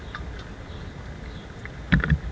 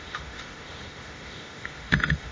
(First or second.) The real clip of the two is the first